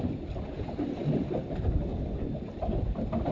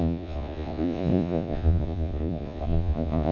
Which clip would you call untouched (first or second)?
first